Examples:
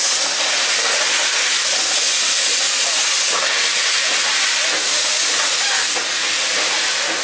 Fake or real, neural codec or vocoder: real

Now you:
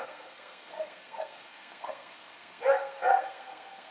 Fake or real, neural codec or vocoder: fake, codec, SNAC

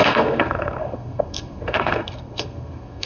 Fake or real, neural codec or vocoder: fake, codec, SNAC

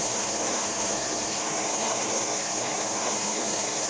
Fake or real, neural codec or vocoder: fake, codec, SNAC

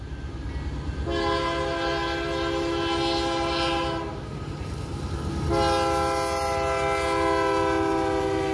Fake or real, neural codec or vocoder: real